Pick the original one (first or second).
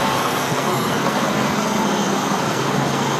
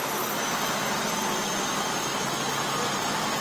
second